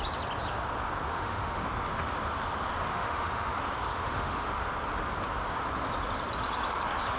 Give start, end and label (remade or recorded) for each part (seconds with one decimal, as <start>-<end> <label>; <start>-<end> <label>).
0.0-1.1 recorded; 1.1-1.6 remade; 1.6-2.9 recorded; 2.9-3.5 remade; 3.5-3.9 recorded; 3.9-4.5 remade; 4.5-7.2 recorded